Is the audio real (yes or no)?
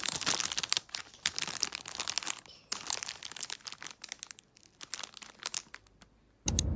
yes